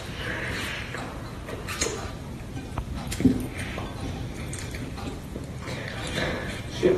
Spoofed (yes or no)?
yes